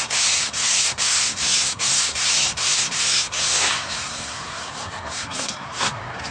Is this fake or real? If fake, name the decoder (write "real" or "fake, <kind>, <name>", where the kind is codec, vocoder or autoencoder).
fake, codec, SNAC